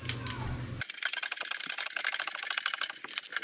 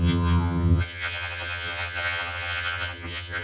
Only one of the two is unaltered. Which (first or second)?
first